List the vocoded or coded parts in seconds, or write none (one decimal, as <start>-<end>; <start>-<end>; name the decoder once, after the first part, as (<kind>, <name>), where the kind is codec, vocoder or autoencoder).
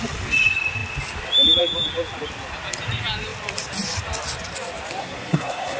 5.0-5.8 (codec, SNAC)